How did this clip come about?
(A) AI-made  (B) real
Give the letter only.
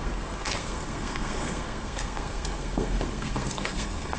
A